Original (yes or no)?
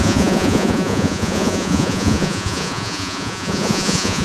no